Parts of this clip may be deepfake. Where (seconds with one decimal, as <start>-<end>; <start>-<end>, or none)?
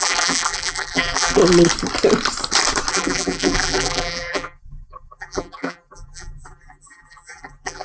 0.0-1.4; 2.9-7.8